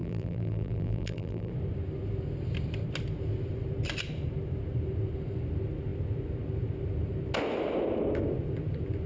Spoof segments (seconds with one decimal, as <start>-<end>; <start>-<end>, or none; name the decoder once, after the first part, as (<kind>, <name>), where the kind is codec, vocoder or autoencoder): 0.0-1.5 (vocoder, BigVGAN v2)